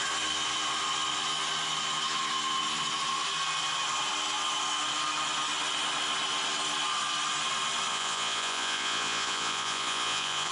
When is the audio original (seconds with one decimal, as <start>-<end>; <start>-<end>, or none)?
0.0-7.9